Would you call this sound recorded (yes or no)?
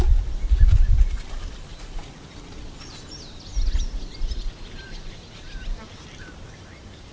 yes